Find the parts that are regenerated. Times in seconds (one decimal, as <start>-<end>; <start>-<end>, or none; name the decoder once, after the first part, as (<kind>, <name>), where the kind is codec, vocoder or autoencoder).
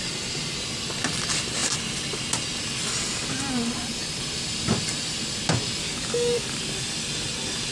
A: 5.8-6.6 (codec, DAC)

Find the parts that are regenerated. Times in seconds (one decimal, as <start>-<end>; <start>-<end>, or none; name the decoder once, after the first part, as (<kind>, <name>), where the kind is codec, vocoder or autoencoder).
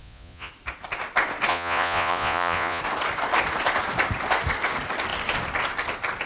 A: 0.0-0.5 (vocoder, Vocos); 1.5-2.8